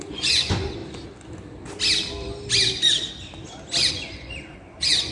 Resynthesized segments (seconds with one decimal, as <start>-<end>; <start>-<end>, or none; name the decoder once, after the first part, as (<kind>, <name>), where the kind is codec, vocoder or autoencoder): 0.0-0.8 (vocoder, Vocos); 3.9-5.1